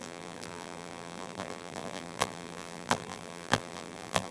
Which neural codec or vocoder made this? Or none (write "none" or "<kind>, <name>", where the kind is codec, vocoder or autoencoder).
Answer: vocoder, BigVGAN v2